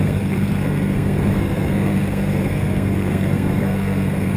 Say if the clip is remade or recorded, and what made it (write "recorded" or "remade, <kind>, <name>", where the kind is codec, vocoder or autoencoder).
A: remade, codec, SNAC